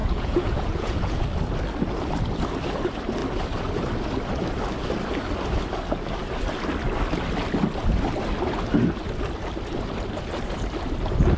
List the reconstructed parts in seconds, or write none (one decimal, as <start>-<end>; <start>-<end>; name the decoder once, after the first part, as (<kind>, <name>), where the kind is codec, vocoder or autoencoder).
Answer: 0.0-1.2 (vocoder, Vocos)